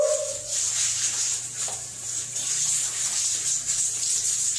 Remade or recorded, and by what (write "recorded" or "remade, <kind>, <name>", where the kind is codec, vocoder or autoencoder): recorded